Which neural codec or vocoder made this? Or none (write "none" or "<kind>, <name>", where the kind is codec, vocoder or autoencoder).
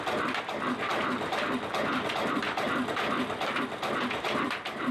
none